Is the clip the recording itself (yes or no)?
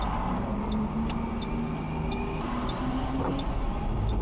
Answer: yes